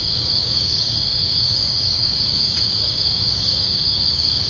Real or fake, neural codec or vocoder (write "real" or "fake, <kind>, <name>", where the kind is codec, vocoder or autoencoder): fake, codec, DAC